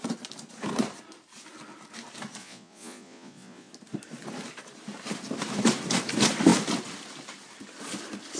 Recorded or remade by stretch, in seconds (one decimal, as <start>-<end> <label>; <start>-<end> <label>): 0.0-2.4 recorded; 2.4-3.7 remade; 3.7-8.4 recorded